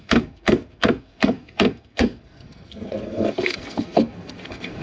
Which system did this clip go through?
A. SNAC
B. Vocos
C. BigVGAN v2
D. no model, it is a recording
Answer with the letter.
A